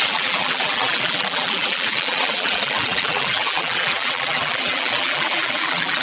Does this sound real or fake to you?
fake